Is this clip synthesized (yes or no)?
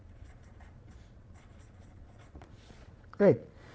yes